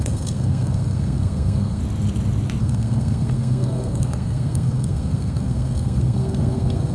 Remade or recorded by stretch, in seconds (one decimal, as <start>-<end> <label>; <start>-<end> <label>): 0.0-1.8 remade; 1.8-2.6 recorded; 2.6-6.9 remade